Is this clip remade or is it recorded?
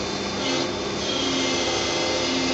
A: recorded